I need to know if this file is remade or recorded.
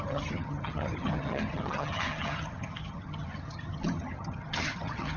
remade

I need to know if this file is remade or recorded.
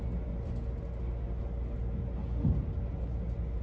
recorded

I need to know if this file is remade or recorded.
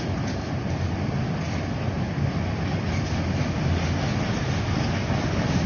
recorded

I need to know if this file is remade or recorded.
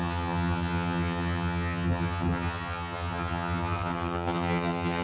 remade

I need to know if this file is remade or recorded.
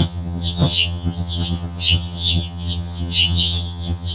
remade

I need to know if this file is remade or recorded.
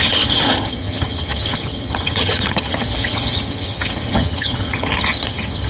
remade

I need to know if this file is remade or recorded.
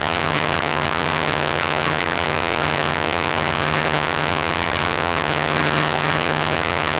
remade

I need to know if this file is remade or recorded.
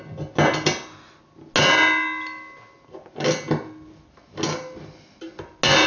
recorded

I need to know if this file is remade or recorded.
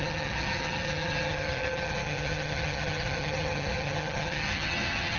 remade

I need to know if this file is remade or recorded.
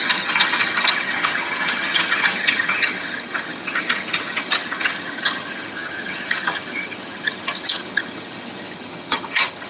remade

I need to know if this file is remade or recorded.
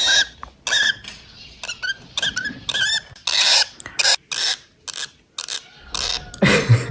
recorded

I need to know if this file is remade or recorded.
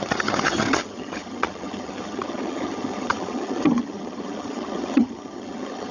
remade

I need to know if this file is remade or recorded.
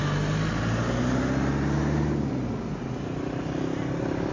recorded